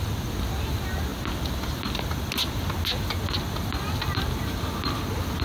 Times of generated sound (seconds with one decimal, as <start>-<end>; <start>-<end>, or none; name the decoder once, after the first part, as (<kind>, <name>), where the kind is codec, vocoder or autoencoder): none